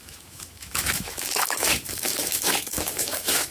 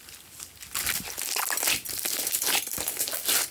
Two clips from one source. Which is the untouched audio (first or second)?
second